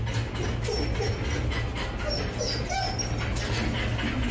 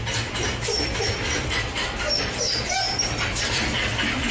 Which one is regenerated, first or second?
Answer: second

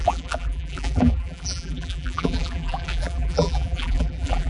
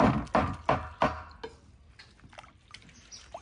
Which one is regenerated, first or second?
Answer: first